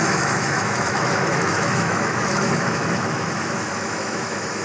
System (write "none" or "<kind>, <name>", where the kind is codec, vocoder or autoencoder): autoencoder, DAC-VAE